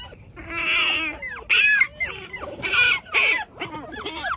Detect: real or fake real